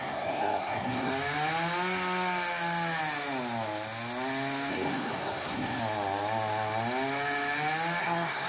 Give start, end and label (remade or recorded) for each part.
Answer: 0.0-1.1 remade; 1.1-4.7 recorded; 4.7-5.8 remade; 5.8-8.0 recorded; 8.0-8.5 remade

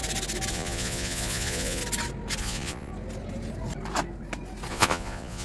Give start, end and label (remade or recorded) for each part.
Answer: 0.0-0.5 recorded; 0.5-1.8 remade; 1.8-2.4 recorded; 2.4-2.9 remade; 2.9-4.7 recorded; 4.7-5.4 remade